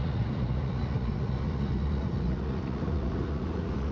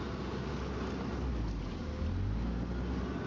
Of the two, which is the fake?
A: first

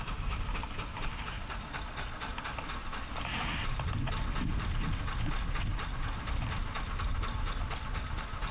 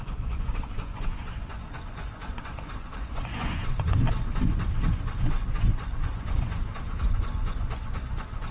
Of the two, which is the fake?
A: second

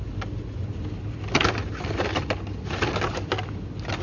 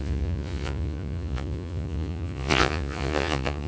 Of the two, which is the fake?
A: second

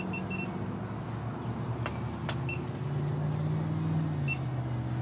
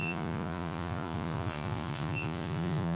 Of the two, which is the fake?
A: second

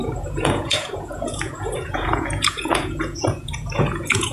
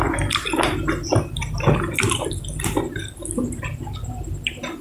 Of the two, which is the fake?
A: first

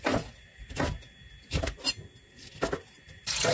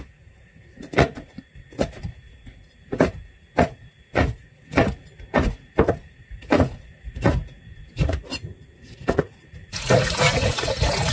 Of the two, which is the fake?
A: second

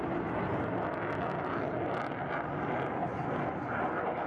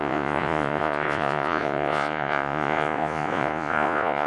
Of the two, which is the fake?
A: second